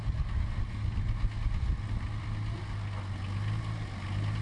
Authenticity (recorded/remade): recorded